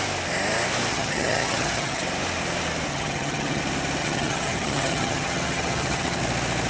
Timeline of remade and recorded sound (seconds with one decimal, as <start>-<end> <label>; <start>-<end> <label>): 0.0-0.9 recorded; 0.9-2.0 remade; 2.0-2.9 recorded; 2.9-3.6 remade; 3.6-4.0 recorded; 4.0-6.2 remade; 6.2-6.7 recorded